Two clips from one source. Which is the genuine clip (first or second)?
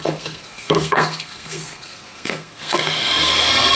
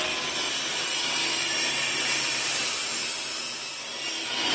second